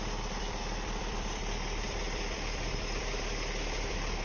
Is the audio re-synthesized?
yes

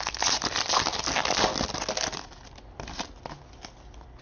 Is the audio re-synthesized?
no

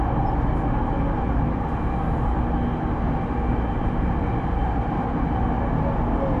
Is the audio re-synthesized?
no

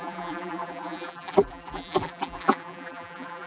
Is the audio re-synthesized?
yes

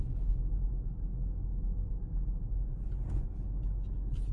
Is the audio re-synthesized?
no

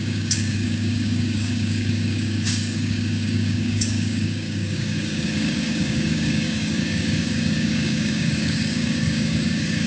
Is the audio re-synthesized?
yes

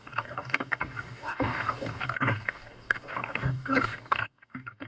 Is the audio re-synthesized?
yes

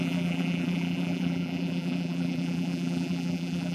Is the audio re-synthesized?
yes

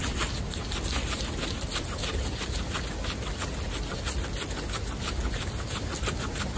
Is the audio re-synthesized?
no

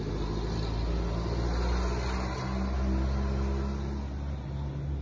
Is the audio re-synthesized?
no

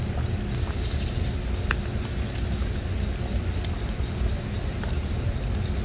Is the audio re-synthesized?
no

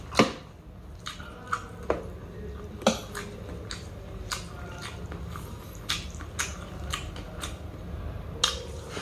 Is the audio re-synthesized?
no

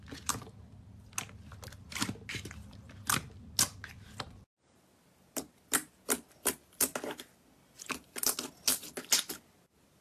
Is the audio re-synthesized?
no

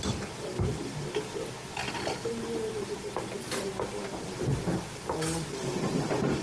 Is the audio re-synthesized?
no